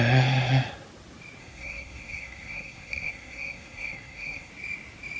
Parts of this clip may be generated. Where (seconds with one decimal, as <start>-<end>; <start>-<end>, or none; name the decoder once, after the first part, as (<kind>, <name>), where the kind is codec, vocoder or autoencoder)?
1.4-4.5 (codec, SNAC)